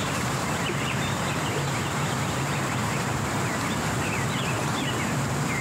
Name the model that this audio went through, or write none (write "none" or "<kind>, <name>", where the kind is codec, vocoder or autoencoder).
vocoder, BigVGAN v2